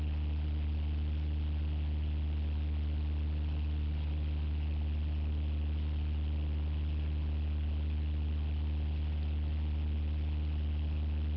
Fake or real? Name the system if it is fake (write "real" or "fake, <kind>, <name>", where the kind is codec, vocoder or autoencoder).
real